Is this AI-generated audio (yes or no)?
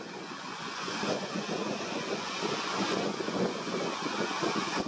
yes